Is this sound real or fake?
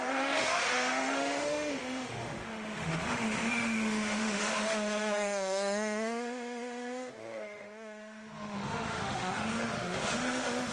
fake